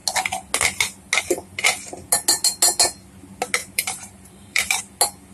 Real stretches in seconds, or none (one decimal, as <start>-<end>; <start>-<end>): 0.0-3.6; 4.8-5.3